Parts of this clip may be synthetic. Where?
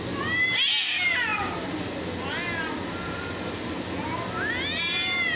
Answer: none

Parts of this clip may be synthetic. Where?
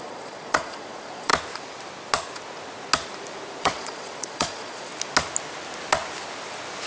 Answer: 0.0-1.3 (vocoder, Vocos); 3.6-4.9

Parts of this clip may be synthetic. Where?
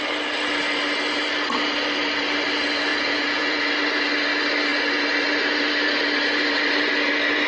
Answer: 2.9-3.6 (vocoder, Vocos)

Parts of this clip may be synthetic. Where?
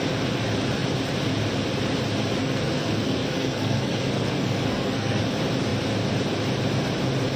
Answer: 2.4-5.2 (codec, SNAC)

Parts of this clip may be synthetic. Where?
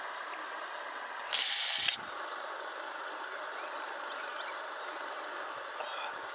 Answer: none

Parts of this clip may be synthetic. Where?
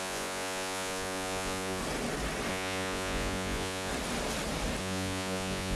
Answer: 0.0-1.8 (vocoder, Vocos); 2.5-3.9; 4.8-5.8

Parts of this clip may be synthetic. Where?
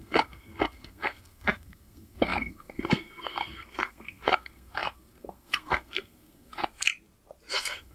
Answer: 0.0-6.9 (codec, SNAC); 7.5-7.9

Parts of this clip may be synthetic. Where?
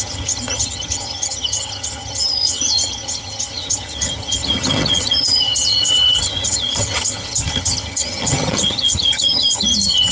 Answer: 0.0-10.1 (vocoder, HiFi-GAN)